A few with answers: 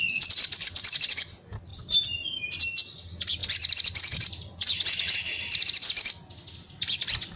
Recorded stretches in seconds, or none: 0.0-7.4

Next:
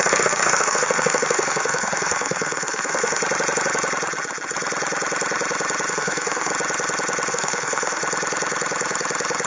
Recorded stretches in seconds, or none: 3.2-5.9; 6.5-7.3; 8.0-9.5

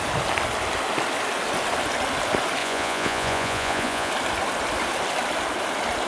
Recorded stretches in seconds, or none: 0.0-2.6; 4.1-6.1

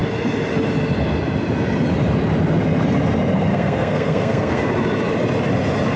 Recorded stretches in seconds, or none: 0.0-3.5; 4.7-6.0